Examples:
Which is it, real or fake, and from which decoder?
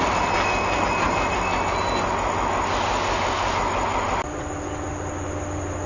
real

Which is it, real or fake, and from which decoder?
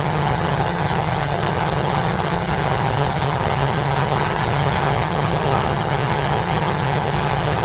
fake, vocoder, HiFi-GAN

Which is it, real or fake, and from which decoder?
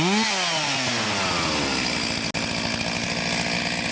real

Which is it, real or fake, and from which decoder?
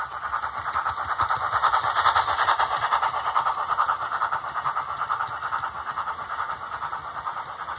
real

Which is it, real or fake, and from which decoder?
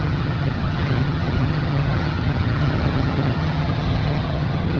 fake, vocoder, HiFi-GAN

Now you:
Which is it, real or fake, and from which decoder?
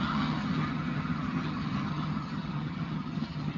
fake, vocoder, HiFi-GAN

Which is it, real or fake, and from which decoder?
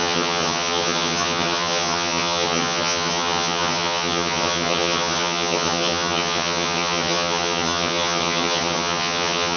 fake, vocoder, HiFi-GAN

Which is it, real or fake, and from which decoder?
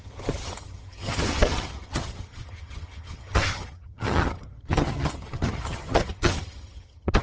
fake, vocoder, HiFi-GAN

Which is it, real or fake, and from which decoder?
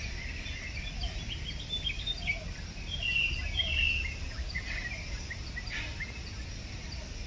real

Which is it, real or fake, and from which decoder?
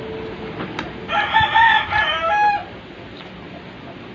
real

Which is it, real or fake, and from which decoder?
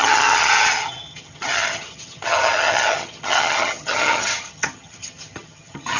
fake, vocoder, HiFi-GAN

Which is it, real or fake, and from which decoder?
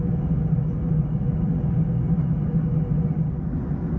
real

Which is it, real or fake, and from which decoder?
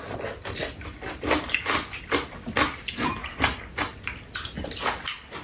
real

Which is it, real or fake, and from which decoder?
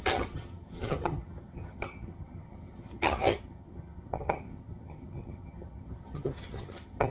fake, vocoder, HiFi-GAN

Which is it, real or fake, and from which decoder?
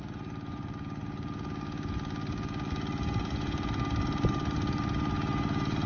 real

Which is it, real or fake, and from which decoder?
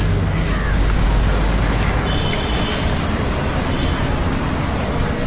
real